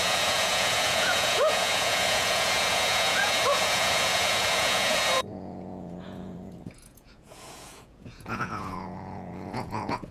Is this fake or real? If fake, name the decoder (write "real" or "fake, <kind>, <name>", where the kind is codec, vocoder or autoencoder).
fake, vocoder, Vocos